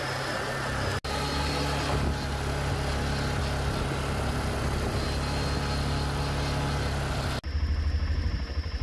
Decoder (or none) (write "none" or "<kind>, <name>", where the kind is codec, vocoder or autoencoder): none